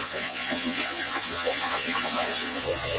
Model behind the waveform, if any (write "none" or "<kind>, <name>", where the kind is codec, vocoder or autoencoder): vocoder, Vocos